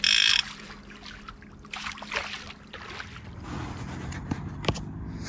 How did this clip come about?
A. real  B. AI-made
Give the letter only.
A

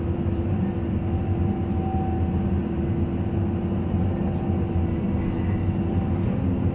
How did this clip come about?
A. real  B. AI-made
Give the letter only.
A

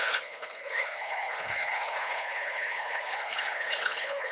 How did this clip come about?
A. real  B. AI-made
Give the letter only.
B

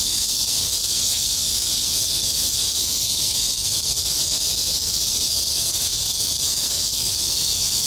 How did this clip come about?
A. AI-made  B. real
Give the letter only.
A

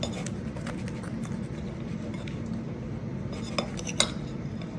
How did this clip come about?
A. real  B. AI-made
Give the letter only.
A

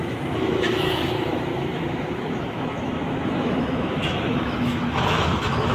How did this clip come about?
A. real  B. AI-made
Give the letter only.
B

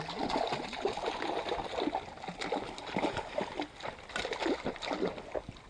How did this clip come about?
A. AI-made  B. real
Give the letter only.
B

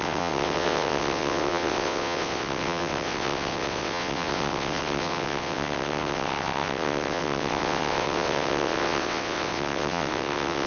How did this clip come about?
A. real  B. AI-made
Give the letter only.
B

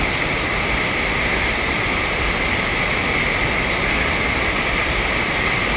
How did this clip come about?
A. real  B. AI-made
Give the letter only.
A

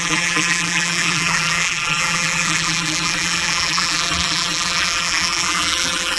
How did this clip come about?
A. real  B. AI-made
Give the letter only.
B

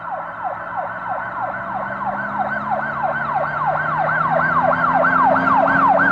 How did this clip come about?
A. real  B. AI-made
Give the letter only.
A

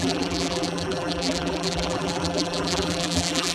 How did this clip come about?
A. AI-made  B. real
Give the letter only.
A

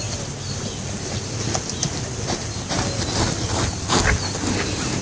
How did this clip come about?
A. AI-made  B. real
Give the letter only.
B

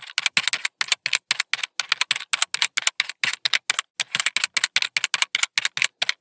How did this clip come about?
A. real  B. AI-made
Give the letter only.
A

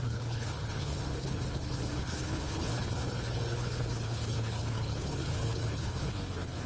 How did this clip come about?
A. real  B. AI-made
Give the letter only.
B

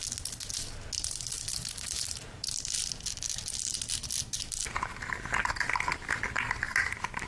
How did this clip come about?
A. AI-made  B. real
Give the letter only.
B